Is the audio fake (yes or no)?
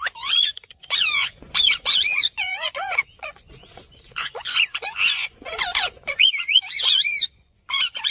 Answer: yes